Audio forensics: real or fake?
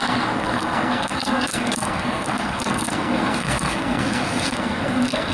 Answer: fake